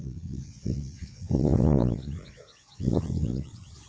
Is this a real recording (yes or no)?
no